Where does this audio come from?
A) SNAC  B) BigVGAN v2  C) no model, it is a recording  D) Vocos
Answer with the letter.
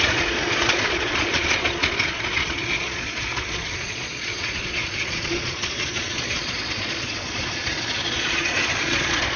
D